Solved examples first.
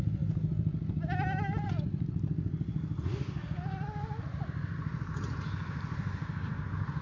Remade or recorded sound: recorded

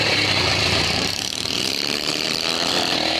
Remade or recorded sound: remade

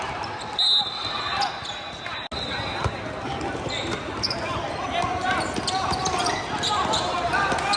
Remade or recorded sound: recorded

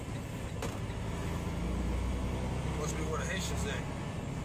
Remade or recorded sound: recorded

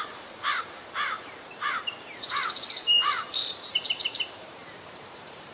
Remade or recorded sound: remade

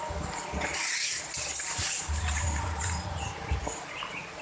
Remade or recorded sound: recorded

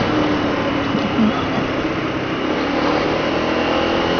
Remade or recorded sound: recorded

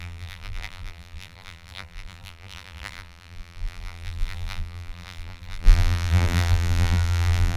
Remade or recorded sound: remade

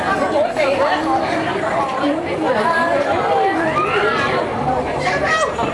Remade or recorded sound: recorded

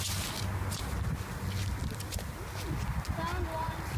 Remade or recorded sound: recorded